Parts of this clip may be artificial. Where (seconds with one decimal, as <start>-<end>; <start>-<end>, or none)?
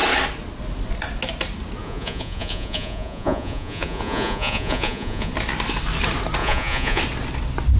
1.8-5.3; 6.4-7.0